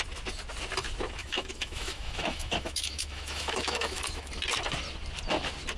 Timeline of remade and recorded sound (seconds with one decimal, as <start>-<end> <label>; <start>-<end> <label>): 0.0-1.2 recorded; 1.2-4.3 remade; 4.3-5.8 recorded